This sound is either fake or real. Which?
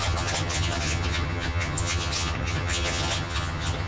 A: fake